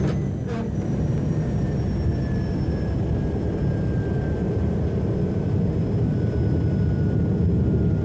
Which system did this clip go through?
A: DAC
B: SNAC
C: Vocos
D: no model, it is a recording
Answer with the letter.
D